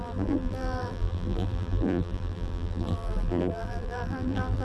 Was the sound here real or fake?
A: fake